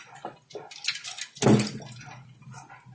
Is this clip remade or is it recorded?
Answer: recorded